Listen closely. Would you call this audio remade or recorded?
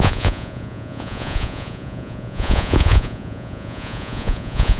remade